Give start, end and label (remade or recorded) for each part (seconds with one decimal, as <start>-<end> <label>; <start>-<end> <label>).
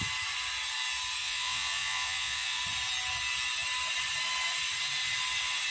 0.0-1.2 recorded; 1.2-2.6 remade; 2.6-5.7 recorded